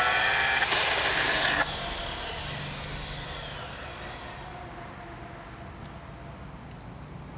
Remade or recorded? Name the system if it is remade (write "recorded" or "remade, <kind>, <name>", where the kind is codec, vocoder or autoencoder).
recorded